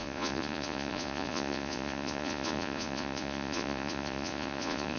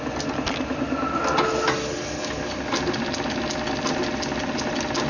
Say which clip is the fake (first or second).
first